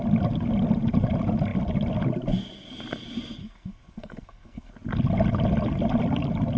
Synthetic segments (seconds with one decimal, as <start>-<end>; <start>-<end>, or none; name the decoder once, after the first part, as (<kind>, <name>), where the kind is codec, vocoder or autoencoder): 3.4-4.7 (codec, SNAC)